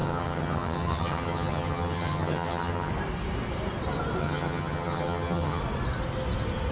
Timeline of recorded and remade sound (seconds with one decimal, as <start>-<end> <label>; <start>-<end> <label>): 0.0-2.9 remade; 2.9-4.2 recorded; 4.2-5.6 remade; 5.6-6.7 recorded